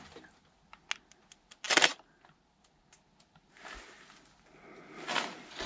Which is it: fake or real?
real